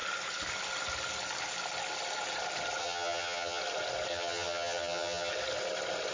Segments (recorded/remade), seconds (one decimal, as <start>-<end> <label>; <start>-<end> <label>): 0.0-2.8 recorded; 2.8-3.6 remade; 3.6-4.1 recorded; 4.1-5.3 remade; 5.3-6.1 recorded